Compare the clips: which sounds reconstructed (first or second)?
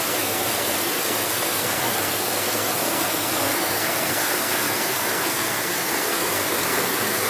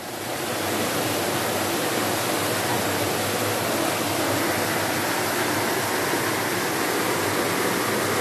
first